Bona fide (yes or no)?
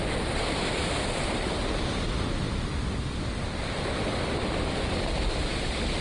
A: yes